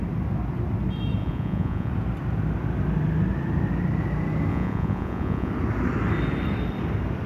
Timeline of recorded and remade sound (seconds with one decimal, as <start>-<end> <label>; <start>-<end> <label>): 0.0-1.2 recorded; 1.2-1.9 remade; 1.9-4.5 recorded; 4.5-5.5 remade; 5.5-7.3 recorded